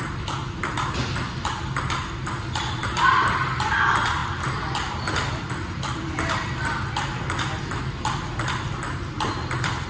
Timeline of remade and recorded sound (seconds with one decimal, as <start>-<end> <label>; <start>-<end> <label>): 0.0-9.9 recorded